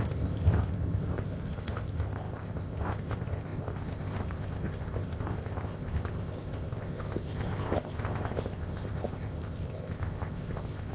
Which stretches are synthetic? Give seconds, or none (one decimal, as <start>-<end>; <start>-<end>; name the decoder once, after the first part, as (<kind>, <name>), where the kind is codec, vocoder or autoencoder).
0.0-10.9 (codec, ZipCodec)